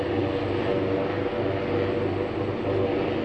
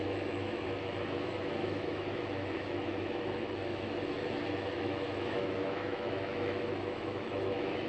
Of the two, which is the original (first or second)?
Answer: first